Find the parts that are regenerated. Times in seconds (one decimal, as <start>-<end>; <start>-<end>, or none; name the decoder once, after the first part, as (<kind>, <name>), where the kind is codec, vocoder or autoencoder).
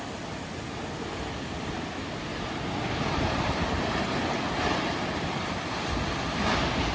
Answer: 2.3-5.0 (vocoder, BigVGAN v2)